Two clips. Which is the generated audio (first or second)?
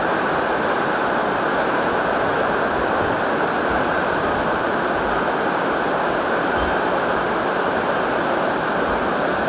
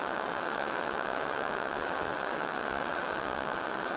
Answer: second